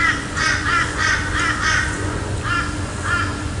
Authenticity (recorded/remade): remade